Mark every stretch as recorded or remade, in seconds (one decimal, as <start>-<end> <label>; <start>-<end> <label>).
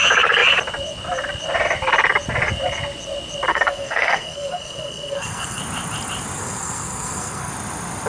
0.0-3.5 recorded; 3.5-5.6 remade; 5.6-6.4 recorded; 6.4-7.5 remade; 7.5-8.1 recorded